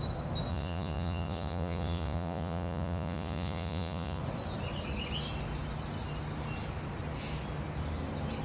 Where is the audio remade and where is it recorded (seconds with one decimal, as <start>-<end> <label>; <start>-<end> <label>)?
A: 0.0-0.5 recorded; 0.5-4.2 remade; 4.2-8.4 recorded